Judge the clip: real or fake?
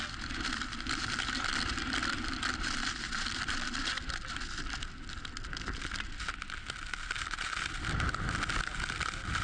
real